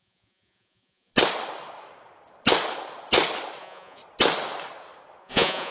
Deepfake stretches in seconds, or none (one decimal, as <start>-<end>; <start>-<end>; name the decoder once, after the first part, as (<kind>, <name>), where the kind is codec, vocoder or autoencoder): 0.0-1.1 (vocoder, Vocos); 3.6-4.0; 5.2-5.7